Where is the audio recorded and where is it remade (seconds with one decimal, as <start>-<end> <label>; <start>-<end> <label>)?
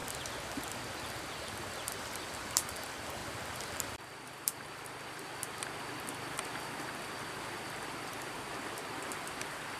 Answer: 0.0-1.5 recorded; 1.5-9.8 remade